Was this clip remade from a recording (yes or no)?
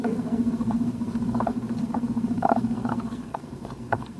yes